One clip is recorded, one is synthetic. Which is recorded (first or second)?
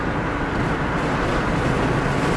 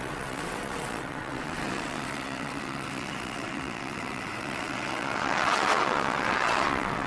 first